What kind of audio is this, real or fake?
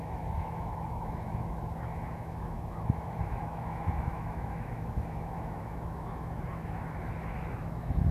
fake